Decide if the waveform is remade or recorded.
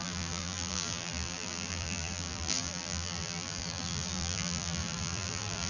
remade